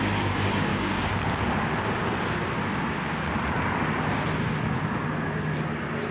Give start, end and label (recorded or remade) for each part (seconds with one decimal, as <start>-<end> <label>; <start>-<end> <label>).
0.0-0.7 recorded; 0.7-1.2 remade; 1.2-6.1 recorded